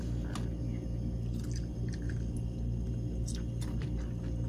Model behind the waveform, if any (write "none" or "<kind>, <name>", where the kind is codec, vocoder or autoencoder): none